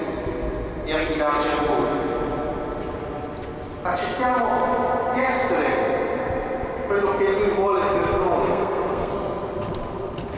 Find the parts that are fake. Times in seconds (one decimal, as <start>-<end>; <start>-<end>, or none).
8.4-9.1